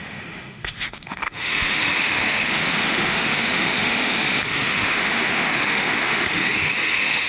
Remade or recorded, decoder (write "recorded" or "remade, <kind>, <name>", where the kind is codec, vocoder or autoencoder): remade, autoencoder, DAC-VAE